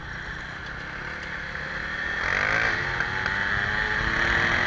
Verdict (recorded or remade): recorded